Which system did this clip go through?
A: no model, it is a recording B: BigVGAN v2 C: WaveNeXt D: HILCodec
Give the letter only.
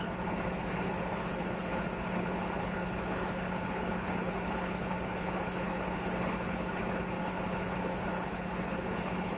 D